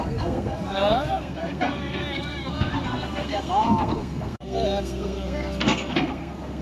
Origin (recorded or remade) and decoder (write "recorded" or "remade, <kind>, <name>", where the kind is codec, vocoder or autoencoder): remade, codec, SNAC